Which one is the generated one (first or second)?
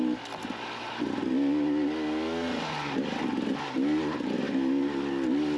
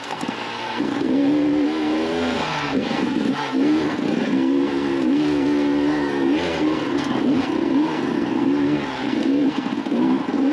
second